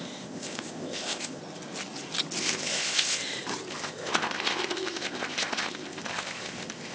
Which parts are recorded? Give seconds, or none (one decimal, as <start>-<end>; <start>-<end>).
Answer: 1.4-2.4; 3.2-3.7